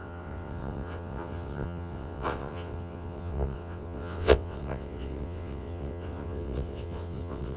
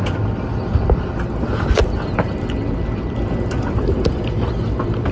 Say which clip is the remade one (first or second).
first